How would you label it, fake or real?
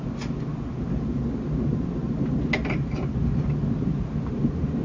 real